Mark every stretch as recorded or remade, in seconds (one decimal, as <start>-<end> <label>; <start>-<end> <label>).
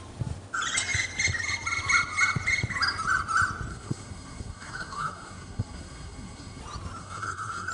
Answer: 0.0-3.7 recorded; 3.7-6.6 remade; 6.6-7.0 recorded; 7.0-7.7 remade